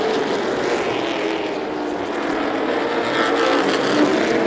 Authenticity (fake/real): real